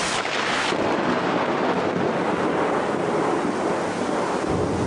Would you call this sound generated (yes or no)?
no